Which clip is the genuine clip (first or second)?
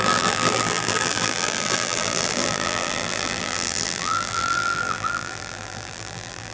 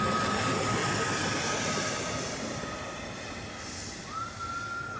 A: second